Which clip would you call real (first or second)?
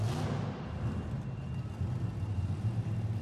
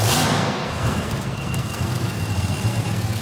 first